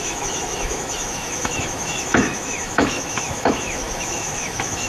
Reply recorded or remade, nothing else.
remade